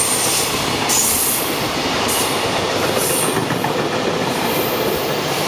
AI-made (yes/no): no